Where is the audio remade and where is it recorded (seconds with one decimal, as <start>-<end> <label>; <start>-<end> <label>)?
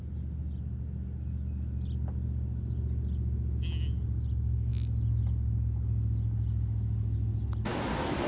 0.0-8.3 recorded